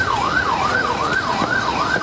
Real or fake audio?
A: fake